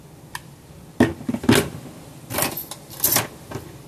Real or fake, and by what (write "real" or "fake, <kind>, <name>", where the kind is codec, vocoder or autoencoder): real